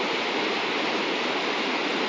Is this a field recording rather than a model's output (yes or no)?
yes